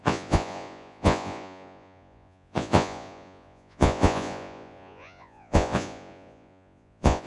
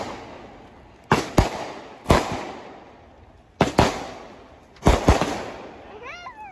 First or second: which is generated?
first